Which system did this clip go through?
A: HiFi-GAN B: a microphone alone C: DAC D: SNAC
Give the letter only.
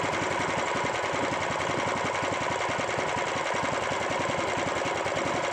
B